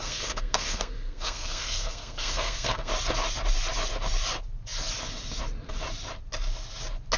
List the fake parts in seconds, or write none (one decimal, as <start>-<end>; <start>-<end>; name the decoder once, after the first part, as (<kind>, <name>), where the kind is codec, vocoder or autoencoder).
0.0-2.9 (codec, SNAC)